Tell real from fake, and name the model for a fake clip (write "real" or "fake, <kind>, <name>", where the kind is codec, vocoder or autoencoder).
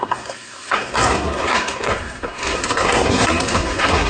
fake, codec, SNAC